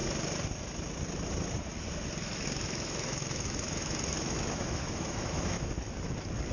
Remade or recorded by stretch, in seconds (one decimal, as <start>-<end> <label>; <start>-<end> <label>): 0.0-2.2 recorded; 2.2-6.1 remade; 6.1-6.5 recorded